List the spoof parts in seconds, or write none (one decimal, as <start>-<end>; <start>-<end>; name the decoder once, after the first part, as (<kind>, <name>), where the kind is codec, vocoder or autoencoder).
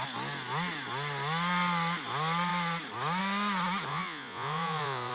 3.9-5.1 (vocoder, Vocos)